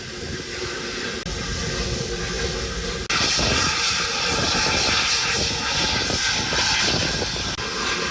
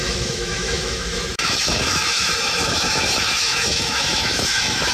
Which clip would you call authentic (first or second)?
first